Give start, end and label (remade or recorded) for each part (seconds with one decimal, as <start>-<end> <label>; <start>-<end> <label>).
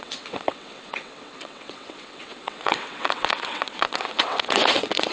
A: 0.0-5.1 remade